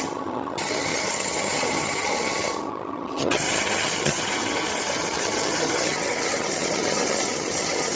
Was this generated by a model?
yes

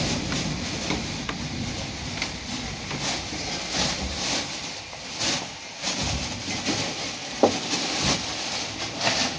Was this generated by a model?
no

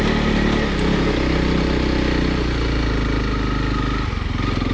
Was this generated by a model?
no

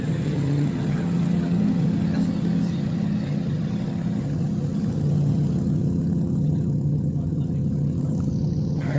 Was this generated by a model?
yes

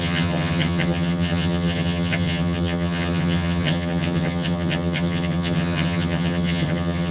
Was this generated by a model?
yes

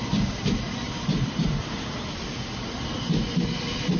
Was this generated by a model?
no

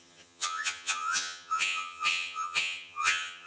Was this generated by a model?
yes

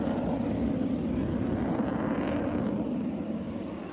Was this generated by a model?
no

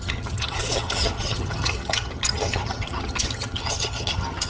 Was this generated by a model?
yes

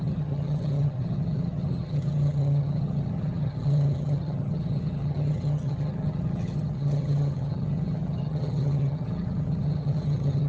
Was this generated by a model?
yes